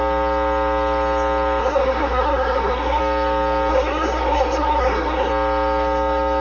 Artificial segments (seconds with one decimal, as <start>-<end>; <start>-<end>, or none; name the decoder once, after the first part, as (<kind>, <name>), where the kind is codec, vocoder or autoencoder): 1.6-3.0 (codec, SNAC); 3.7-5.3